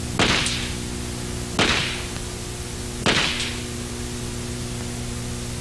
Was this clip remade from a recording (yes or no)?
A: no